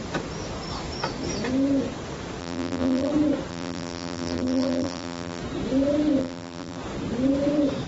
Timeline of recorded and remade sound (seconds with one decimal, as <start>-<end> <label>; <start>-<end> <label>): 0.0-2.4 recorded; 2.4-3.1 remade; 3.1-3.5 recorded; 3.5-5.4 remade; 5.4-6.2 recorded; 6.2-6.8 remade; 6.8-7.9 recorded